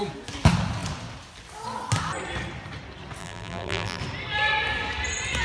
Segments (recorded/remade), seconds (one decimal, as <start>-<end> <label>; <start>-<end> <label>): 0.0-3.2 recorded; 3.2-4.0 remade; 4.0-5.4 recorded

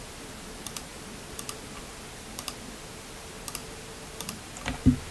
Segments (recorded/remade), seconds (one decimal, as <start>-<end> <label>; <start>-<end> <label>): 0.0-0.9 remade; 0.9-1.8 recorded; 1.8-3.6 remade; 3.6-5.1 recorded

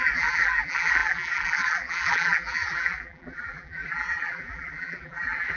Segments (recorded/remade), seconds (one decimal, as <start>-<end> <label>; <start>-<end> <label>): 0.0-5.6 remade

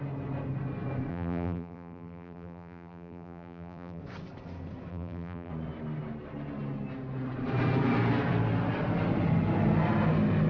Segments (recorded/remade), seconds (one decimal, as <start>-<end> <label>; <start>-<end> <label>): 0.0-1.1 recorded; 1.1-4.0 remade; 4.0-4.9 recorded; 4.9-5.5 remade; 5.5-10.5 recorded

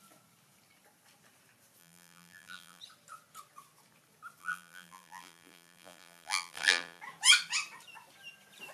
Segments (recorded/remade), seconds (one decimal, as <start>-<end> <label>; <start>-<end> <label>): 0.0-1.8 recorded; 1.8-2.8 remade; 2.8-4.4 recorded; 4.4-7.0 remade; 7.0-8.7 recorded

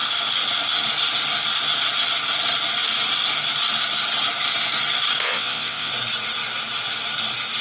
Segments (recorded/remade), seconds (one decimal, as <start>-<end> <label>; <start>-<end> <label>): 0.0-5.2 recorded; 5.2-5.9 remade; 5.9-7.6 recorded

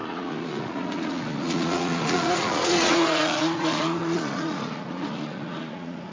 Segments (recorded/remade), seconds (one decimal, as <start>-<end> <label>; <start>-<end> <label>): 0.0-6.1 remade